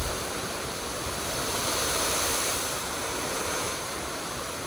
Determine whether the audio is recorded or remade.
remade